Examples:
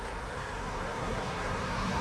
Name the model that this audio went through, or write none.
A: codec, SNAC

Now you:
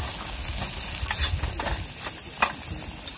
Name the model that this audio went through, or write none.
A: none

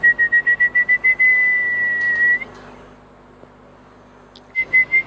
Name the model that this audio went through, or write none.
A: none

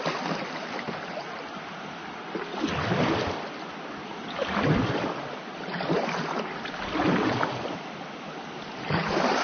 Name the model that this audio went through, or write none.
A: none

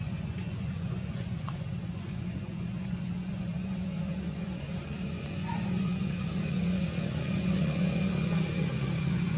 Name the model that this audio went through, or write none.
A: vocoder, Vocos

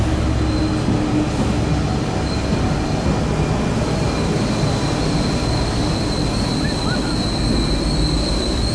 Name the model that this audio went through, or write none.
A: none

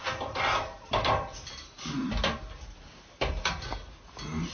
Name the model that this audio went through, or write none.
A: none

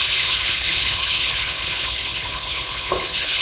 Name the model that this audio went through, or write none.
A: codec, HILCodec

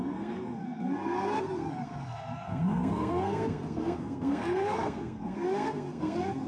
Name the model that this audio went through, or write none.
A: codec, SNAC